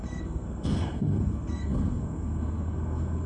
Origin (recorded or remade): remade